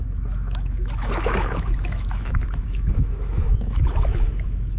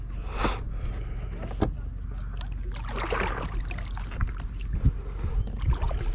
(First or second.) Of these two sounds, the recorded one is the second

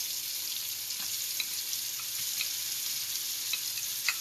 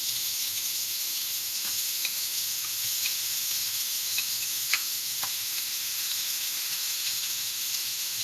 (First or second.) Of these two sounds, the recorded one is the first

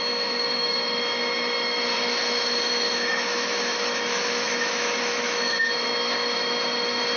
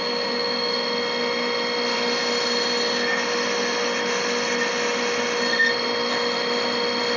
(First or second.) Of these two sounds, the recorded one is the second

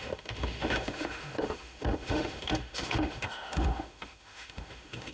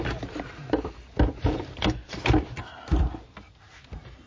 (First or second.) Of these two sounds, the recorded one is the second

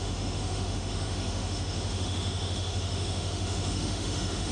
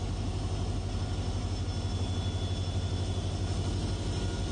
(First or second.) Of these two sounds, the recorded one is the second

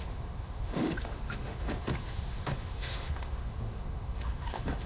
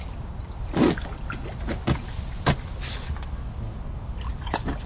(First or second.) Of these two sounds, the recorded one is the second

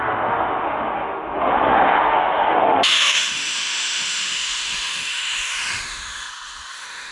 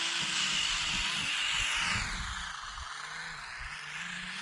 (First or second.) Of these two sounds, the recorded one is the second